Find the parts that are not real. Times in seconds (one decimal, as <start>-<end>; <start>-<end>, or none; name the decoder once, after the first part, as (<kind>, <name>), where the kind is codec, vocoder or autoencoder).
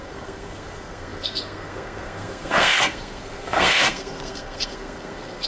0.0-5.5 (codec, SNAC)